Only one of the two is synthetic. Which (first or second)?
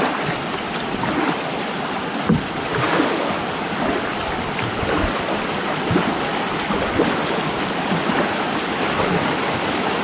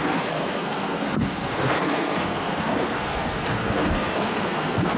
second